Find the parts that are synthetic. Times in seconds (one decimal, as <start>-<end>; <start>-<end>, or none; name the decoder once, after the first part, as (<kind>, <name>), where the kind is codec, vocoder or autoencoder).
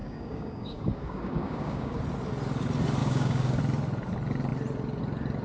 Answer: 0.0-2.0 (codec, DAC); 3.0-3.6